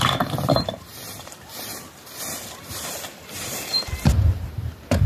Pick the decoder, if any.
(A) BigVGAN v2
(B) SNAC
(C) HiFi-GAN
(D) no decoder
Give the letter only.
A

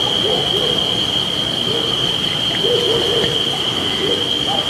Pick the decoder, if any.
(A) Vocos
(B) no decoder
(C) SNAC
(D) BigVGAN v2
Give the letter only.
B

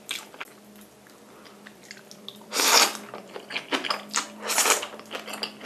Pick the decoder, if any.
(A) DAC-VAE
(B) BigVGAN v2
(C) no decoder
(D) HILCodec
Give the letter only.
C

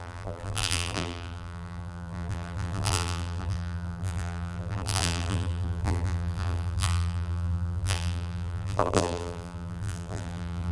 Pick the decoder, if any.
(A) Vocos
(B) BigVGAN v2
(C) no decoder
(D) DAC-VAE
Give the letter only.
B